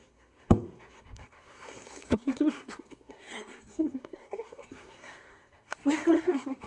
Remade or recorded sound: remade